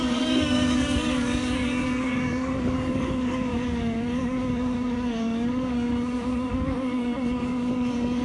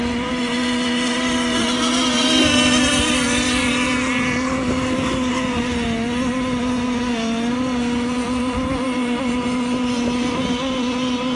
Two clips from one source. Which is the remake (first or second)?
first